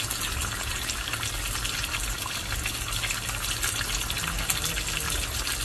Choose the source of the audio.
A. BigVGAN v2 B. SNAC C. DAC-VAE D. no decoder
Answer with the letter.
D